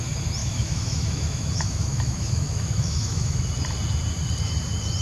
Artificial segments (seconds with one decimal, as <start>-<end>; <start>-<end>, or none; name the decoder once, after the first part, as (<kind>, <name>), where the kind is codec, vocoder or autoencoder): 0.4-3.4 (autoencoder, DAC-VAE)